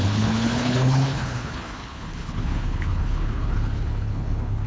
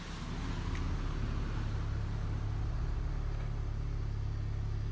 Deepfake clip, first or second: first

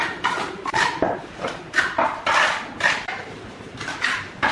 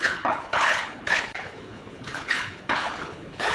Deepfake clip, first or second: second